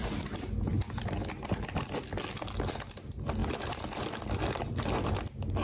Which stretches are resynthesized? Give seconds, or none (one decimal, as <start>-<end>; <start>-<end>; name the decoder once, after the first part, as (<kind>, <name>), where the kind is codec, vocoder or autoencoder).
3.4-4.5 (vocoder, BigVGAN v2)